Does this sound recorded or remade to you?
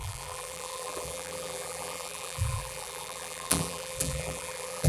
remade